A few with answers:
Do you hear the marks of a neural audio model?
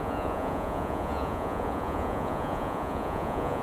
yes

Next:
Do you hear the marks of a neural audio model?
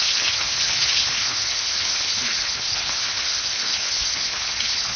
yes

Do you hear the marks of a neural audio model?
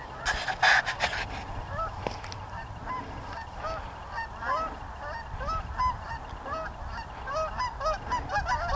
no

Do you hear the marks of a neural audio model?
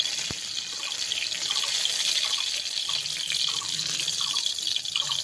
no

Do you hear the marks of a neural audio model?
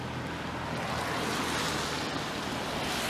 no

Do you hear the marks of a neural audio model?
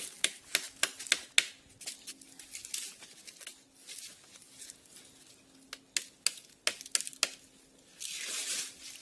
no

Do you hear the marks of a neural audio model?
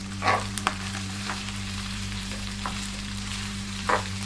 yes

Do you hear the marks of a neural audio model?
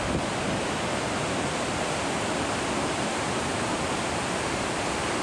no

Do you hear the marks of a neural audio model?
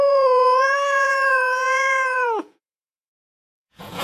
yes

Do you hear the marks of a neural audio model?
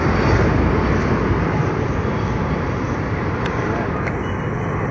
no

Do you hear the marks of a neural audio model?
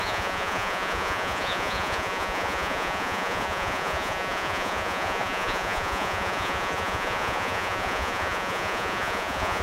yes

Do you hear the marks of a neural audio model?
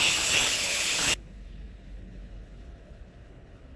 yes